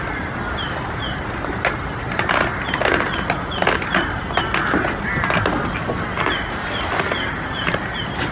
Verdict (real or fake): real